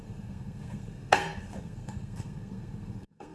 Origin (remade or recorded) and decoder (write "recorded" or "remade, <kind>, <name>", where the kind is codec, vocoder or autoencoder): remade, codec, SNAC